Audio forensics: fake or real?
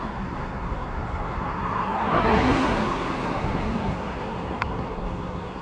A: fake